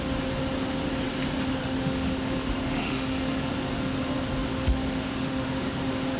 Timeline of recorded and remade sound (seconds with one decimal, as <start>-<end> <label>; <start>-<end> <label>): 0.0-1.6 recorded; 1.6-3.5 remade; 3.5-4.5 recorded; 4.5-5.6 remade; 5.6-6.2 recorded